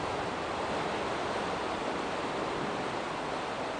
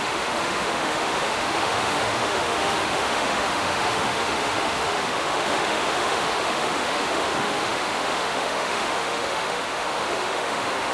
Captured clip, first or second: first